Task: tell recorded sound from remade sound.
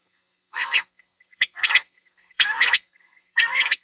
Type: remade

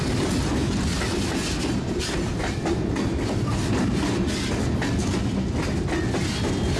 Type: recorded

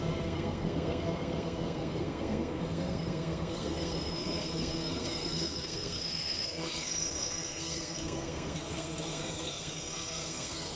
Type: remade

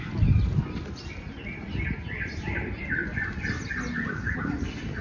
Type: recorded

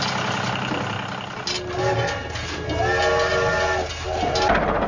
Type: recorded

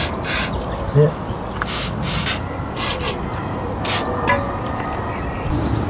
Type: recorded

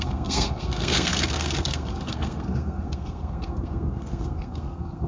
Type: remade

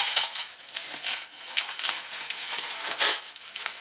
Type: remade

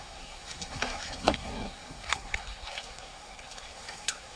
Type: remade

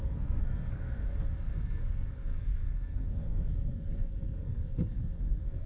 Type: remade